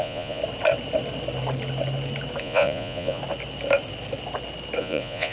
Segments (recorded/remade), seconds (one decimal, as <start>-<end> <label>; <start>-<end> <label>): 0.0-0.4 remade; 0.4-2.4 recorded; 2.4-3.2 remade; 3.2-4.8 recorded; 4.8-5.3 remade